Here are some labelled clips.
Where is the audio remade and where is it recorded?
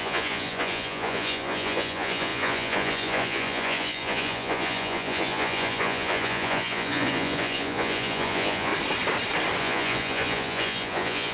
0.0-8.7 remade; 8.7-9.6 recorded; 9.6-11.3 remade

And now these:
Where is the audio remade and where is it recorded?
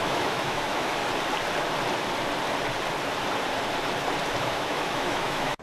0.0-1.0 remade; 1.0-4.4 recorded; 4.4-5.6 remade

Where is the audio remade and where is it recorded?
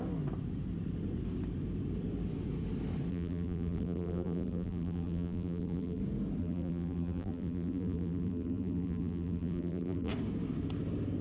0.0-3.1 recorded; 3.1-6.0 remade; 6.0-6.4 recorded; 6.4-10.1 remade; 10.1-11.2 recorded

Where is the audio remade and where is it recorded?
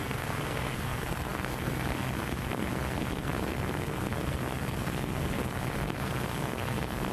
0.0-7.1 remade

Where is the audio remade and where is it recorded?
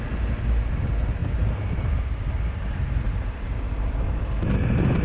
0.0-1.2 recorded; 1.2-4.2 remade; 4.2-5.0 recorded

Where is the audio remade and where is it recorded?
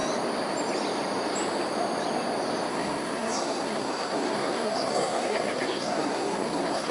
0.0-2.7 recorded; 2.7-6.9 remade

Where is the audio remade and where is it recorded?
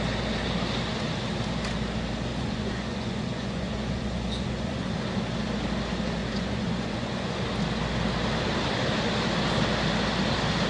0.0-2.3 recorded; 2.3-4.9 remade; 4.9-6.2 recorded; 6.2-7.5 remade; 7.5-10.7 recorded